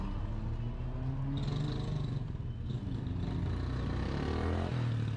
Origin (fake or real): real